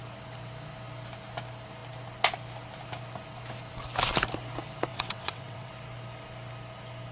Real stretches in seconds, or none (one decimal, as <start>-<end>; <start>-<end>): 0.0-4.9; 5.7-7.1